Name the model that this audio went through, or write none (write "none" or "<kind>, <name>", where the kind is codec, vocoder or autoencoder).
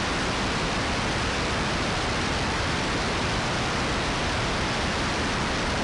none